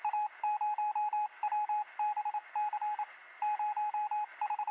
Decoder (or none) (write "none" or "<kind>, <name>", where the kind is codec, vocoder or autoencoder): none